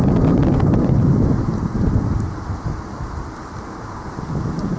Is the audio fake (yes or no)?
no